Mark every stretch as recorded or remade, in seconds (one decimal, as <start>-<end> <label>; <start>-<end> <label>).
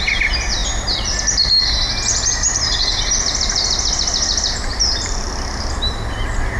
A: 0.0-4.7 recorded; 4.7-5.3 remade; 5.3-6.6 recorded